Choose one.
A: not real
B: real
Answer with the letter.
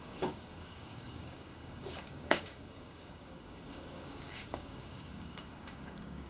A